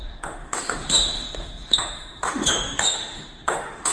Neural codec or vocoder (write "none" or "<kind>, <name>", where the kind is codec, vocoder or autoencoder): autoencoder, DAC-VAE